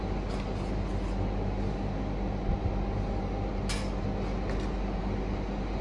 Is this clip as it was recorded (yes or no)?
yes